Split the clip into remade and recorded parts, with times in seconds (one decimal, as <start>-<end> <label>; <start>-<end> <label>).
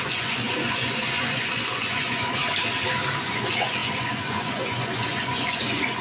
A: 0.0-2.4 remade; 2.4-3.2 recorded; 3.2-6.0 remade